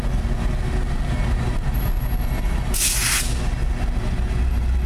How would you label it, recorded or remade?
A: recorded